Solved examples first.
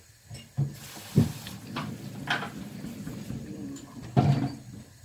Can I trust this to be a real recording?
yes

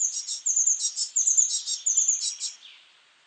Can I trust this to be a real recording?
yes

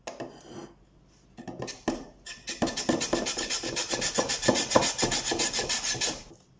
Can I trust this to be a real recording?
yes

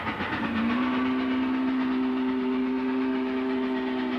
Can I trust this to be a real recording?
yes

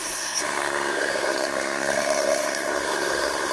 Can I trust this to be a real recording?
no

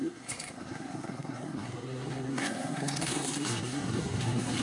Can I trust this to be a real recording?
no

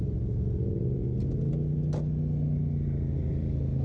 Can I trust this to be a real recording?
yes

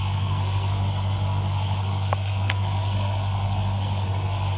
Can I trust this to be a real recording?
no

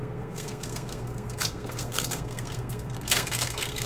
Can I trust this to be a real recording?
no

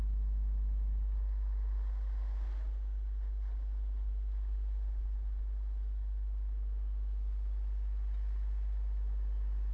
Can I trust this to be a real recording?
yes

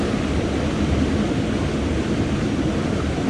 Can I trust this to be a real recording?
yes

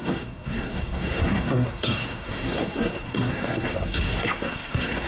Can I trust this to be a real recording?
no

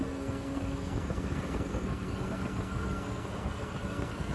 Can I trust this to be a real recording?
no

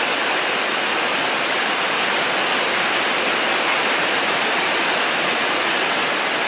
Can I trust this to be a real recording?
yes